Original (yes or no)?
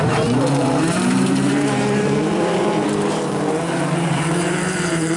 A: no